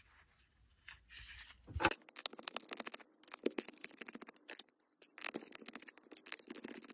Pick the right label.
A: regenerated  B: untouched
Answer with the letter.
B